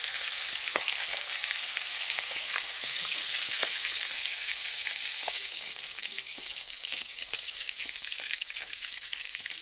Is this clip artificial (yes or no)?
yes